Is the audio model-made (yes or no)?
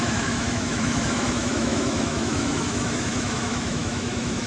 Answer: yes